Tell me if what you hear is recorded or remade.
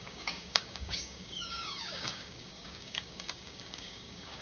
remade